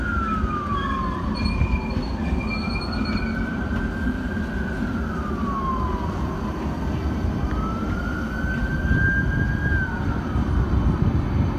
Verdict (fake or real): real